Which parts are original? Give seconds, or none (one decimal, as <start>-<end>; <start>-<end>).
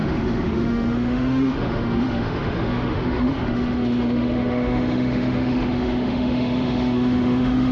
none